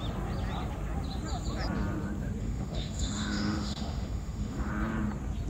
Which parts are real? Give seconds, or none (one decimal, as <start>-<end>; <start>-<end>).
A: 0.0-2.4; 4.7-5.5

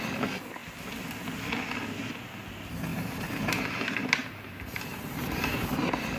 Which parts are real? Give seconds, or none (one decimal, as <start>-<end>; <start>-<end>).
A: 0.0-2.9; 3.8-4.2; 5.7-6.2

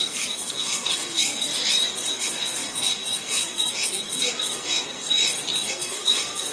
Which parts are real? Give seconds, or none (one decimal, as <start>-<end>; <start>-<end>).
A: 1.5-2.1; 5.2-5.7

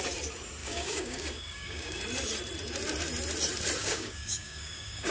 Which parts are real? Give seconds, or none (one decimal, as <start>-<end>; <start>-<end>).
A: 0.0-0.6; 2.0-3.8

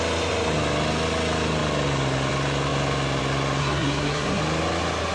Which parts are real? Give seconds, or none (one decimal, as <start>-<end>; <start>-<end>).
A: 0.0-3.6; 4.4-5.1

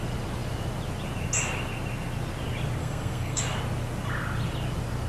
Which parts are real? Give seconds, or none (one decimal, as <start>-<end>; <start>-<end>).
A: 0.0-2.8; 3.4-5.1

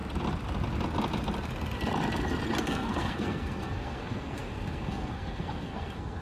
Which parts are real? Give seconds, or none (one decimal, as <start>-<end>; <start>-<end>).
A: 0.0-2.6

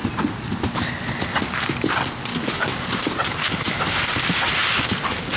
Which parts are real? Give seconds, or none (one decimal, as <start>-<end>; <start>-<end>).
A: 0.0-2.3; 2.9-5.4